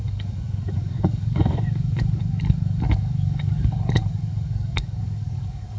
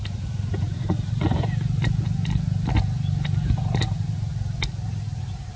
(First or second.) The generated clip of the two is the first